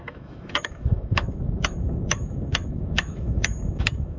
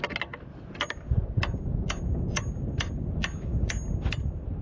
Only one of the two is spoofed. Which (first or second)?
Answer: first